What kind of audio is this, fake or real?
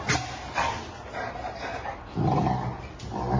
real